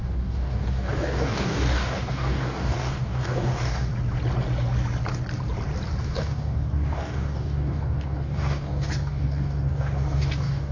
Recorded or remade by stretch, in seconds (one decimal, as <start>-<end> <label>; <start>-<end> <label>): 0.0-3.9 remade; 3.9-6.0 recorded; 6.0-10.7 remade